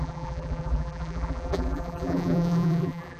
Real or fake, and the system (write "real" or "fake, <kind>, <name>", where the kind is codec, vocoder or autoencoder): fake, vocoder, BigVGAN v2